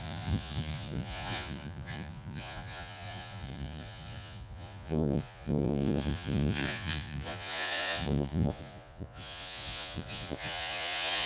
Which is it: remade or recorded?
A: remade